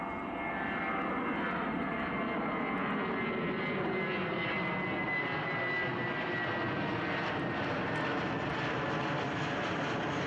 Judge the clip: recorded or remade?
recorded